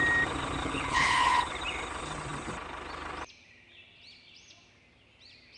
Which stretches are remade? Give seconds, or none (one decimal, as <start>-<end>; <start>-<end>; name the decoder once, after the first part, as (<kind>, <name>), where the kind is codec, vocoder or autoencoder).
0.6-1.5 (codec, HILCodec)